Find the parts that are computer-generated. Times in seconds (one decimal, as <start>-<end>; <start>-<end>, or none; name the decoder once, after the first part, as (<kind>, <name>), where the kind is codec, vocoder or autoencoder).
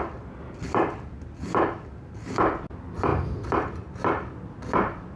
none